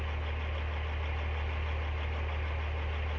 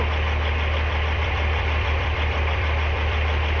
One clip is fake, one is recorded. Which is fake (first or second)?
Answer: second